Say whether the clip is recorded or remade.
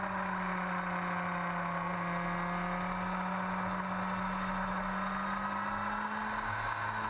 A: recorded